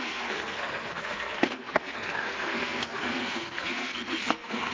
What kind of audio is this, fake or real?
fake